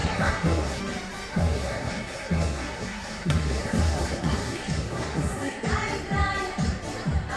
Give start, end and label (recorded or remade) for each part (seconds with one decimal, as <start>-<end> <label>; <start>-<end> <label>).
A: 0.0-0.8 remade; 0.8-1.3 recorded; 1.3-5.7 remade; 5.7-7.4 recorded